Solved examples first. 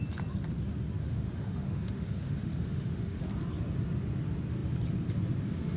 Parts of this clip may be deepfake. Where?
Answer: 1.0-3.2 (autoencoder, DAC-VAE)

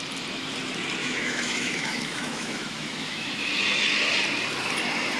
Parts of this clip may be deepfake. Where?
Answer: 1.0-3.5 (autoencoder, DAC-VAE)

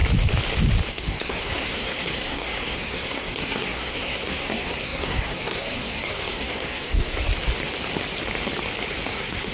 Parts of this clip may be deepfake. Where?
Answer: 0.9-7.3 (codec, SNAC); 9.1-9.5

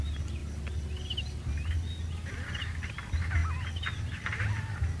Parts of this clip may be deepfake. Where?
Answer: none

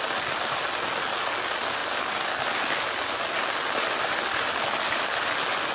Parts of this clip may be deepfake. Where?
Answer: none